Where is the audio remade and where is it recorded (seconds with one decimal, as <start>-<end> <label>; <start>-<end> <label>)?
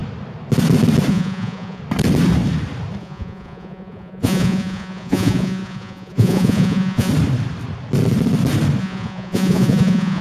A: 0.0-1.1 recorded; 1.1-1.8 remade; 1.8-3.0 recorded; 3.0-7.1 remade; 7.1-8.8 recorded; 8.8-10.2 remade